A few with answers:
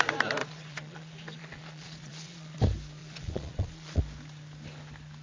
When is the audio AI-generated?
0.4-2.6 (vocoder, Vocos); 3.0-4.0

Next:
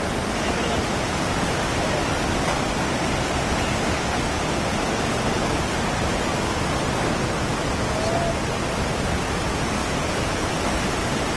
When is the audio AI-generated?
9.8-10.6 (vocoder, Vocos)